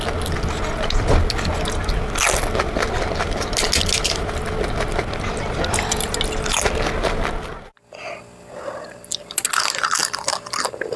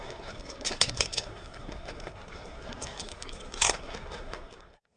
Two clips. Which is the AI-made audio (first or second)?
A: second